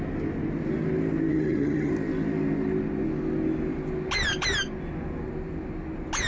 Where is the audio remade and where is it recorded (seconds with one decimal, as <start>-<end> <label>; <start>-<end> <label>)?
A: 0.0-1.3 recorded; 1.3-1.9 remade; 1.9-6.3 recorded